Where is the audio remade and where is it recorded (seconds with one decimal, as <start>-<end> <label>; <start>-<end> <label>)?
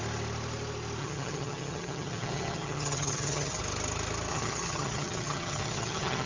0.0-1.0 recorded; 1.0-3.6 remade; 3.6-4.3 recorded; 4.3-6.3 remade